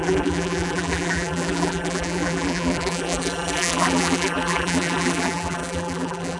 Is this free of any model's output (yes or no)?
no